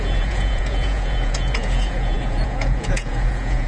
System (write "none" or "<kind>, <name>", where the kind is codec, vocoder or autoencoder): vocoder, Vocos